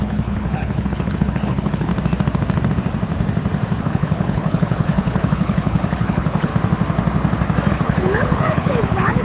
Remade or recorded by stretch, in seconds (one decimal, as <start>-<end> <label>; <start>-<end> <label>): 0.0-1.9 remade; 1.9-3.8 recorded; 3.8-6.5 remade; 6.5-7.7 recorded; 7.7-9.2 remade